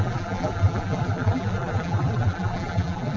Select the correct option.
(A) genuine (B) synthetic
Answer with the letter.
B